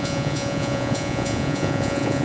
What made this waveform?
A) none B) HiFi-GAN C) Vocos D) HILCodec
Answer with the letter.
C